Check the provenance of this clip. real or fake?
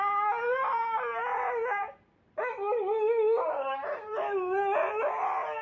fake